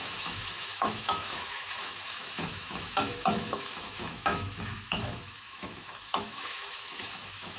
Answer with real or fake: fake